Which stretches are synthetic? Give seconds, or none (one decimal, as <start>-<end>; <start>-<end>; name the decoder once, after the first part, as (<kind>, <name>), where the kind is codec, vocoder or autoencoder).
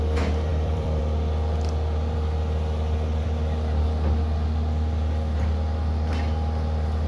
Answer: 0.5-1.0 (vocoder, BigVGAN v2)